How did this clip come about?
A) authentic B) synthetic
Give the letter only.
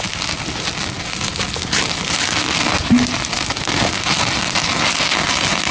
A